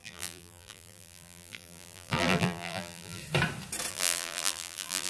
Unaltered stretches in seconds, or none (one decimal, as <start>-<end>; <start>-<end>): 3.2-3.9